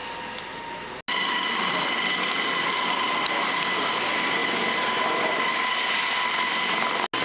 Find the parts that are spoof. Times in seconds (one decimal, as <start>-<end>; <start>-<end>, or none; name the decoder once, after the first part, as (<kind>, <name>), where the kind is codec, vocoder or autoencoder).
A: none